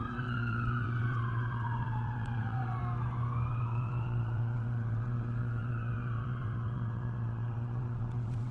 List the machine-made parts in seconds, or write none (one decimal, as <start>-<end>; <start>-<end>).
0.0-2.8; 3.5-8.5